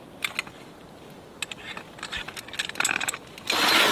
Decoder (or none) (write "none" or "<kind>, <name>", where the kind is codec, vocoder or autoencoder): none